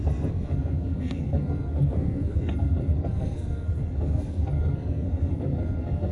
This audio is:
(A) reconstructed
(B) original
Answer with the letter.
A